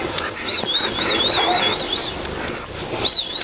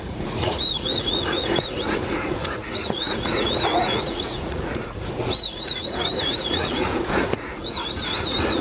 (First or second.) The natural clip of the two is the first